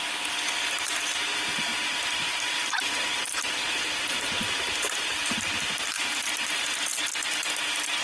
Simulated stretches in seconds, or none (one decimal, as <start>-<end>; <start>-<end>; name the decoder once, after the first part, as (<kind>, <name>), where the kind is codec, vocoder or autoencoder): 0.0-6.9 (vocoder, BigVGAN v2)